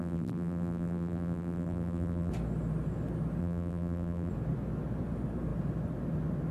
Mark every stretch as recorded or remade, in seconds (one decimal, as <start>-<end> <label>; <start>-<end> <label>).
0.0-2.3 remade; 2.3-3.4 recorded; 3.4-4.3 remade; 4.3-6.5 recorded